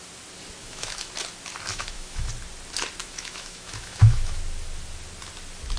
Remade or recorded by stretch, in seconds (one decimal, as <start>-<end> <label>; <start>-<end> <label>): 0.0-0.6 recorded; 0.6-1.1 remade; 1.1-1.7 recorded; 1.7-2.3 remade; 2.3-3.0 recorded; 3.0-4.4 remade; 4.4-5.8 recorded